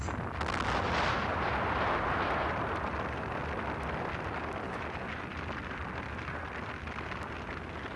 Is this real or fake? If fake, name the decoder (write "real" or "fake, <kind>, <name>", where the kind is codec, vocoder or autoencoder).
real